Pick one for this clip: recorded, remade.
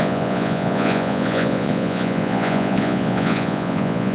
remade